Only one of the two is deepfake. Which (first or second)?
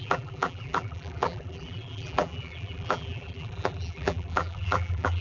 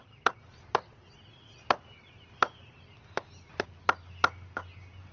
first